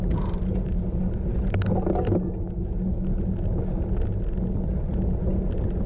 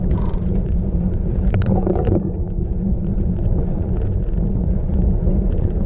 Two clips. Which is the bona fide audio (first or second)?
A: first